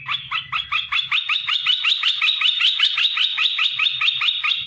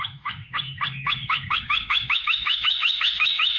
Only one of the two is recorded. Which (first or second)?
first